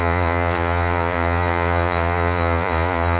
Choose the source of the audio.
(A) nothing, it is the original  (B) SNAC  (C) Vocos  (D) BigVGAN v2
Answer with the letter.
C